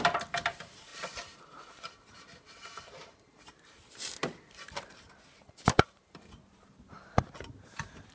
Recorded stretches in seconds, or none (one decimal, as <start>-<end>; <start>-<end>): 0.0-8.1